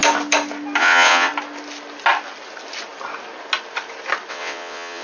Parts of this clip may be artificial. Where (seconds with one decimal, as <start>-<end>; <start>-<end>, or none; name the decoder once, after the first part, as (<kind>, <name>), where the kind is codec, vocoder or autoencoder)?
0.8-1.3 (vocoder, WaveNeXt); 4.3-5.0